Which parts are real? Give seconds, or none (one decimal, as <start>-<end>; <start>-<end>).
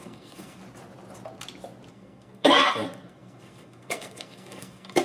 0.6-1.9